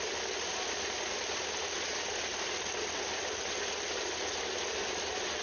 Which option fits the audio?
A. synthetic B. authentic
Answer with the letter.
B